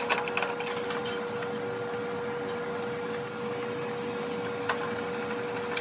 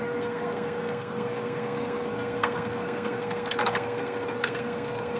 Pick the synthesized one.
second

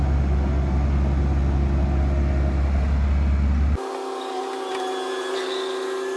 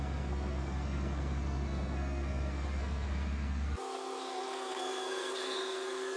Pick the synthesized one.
second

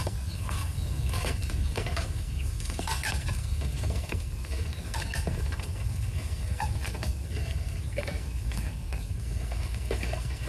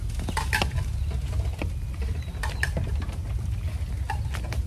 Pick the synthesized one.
first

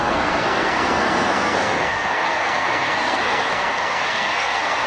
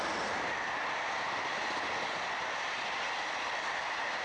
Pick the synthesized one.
first